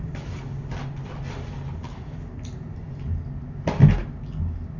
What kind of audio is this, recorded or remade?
recorded